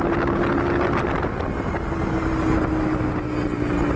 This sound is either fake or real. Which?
real